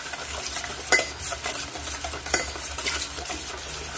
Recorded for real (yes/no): yes